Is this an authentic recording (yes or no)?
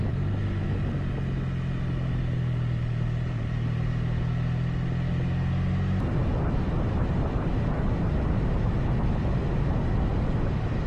yes